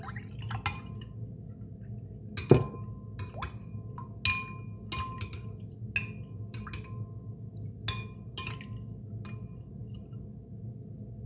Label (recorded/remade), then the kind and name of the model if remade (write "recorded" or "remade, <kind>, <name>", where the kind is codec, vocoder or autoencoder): recorded